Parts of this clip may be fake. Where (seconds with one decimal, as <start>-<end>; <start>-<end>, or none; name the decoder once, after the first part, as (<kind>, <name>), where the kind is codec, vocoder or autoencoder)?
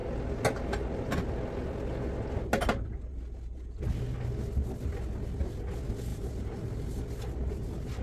6.1-7.0 (vocoder, BigVGAN v2)